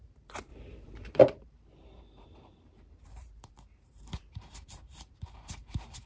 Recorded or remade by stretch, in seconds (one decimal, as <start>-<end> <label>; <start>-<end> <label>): 0.0-6.1 remade